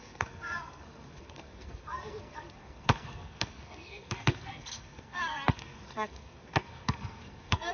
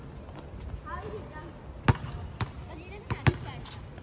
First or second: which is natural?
second